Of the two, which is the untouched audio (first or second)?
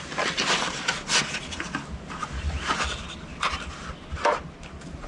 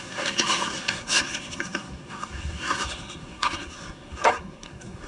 first